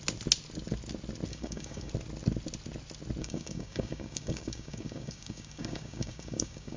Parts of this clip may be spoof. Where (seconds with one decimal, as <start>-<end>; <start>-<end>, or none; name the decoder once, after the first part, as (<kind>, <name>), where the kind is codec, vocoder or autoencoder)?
1.3-1.9 (codec, DAC); 3.2-6.8